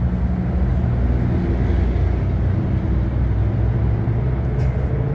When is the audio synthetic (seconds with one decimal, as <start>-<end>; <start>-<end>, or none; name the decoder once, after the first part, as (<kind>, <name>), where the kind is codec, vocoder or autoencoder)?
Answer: none